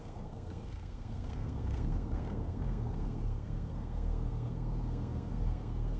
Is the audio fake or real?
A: fake